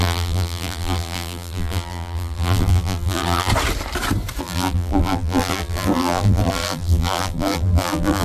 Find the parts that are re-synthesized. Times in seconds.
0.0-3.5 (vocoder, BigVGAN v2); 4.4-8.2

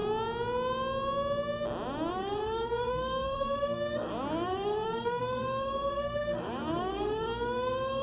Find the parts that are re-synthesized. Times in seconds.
2.1-8.0 (codec, SNAC)

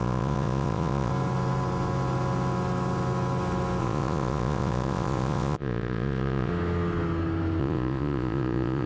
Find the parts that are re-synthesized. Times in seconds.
0.0-1.1 (vocoder, Vocos); 3.8-6.5; 7.6-8.9

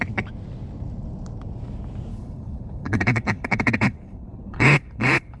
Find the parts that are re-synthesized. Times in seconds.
2.1-5.4 (codec, HILCodec)

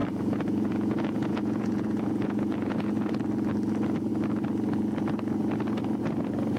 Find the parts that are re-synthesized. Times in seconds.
0.0-3.1 (vocoder, Vocos)

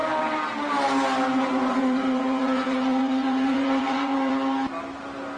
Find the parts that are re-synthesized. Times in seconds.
1.4-4.3 (vocoder, Vocos)